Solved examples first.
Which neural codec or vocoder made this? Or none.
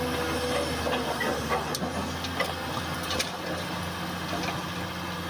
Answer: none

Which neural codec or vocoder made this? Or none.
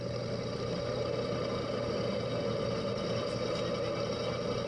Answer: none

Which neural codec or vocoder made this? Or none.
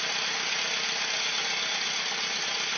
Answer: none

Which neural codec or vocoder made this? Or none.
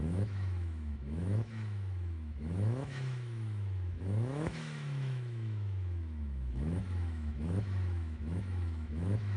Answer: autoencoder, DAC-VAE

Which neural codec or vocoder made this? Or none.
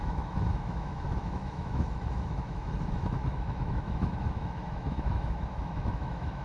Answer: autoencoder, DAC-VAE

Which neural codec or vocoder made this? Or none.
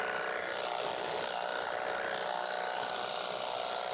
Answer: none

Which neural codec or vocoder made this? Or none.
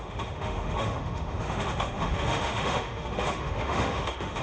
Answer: autoencoder, DAC-VAE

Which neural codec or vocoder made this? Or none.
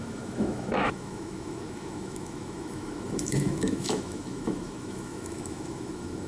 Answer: autoencoder, DAC-VAE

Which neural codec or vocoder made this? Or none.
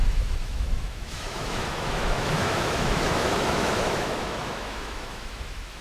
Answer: autoencoder, DAC-VAE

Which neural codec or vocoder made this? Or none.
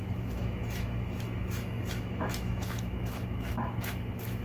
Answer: autoencoder, DAC-VAE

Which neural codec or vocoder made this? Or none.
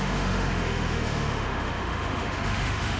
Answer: autoencoder, DAC-VAE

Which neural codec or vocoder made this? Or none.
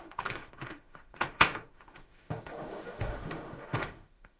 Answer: autoencoder, DAC-VAE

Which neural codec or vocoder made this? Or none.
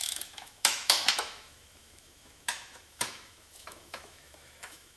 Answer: autoencoder, DAC-VAE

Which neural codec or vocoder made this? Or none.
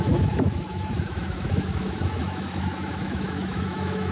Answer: autoencoder, DAC-VAE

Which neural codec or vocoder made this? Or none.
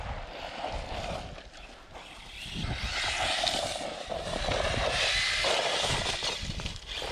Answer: none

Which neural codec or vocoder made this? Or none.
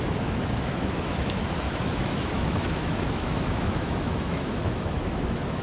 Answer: autoencoder, DAC-VAE